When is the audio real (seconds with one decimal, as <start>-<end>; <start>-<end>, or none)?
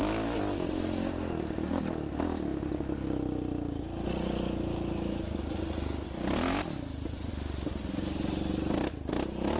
0.0-9.6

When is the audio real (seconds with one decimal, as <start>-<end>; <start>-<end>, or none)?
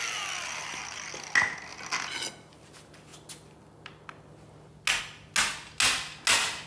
0.0-6.7